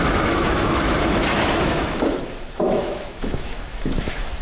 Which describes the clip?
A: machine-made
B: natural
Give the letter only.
A